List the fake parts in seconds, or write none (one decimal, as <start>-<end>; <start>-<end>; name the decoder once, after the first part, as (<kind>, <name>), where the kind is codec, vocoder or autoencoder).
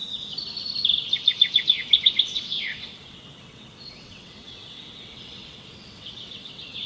2.2-6.9 (vocoder, WaveNeXt)